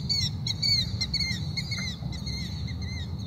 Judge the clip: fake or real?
real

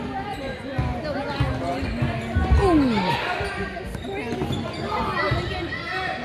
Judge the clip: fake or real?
real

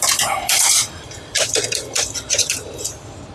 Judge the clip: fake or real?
fake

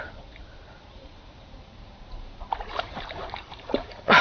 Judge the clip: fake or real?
fake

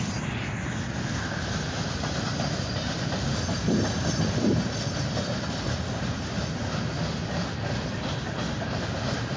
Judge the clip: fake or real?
real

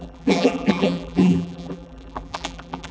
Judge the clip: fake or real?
fake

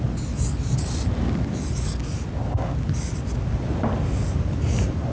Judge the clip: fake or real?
real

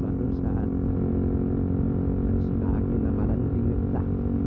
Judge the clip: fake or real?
real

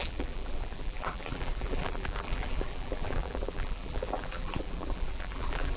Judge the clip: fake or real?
fake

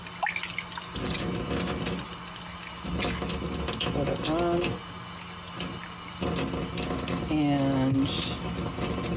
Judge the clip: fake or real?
real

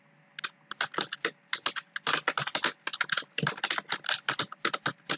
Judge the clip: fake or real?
real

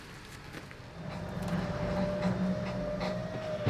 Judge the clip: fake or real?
real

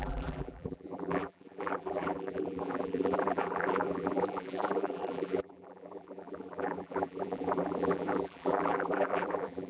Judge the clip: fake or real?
fake